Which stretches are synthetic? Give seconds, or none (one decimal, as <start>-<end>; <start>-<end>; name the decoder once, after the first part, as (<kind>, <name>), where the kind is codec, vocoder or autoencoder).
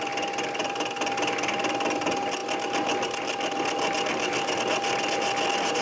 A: none